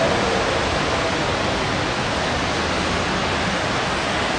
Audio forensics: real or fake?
fake